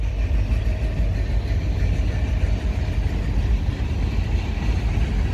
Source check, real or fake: real